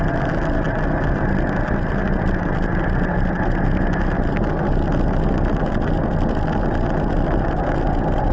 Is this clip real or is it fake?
real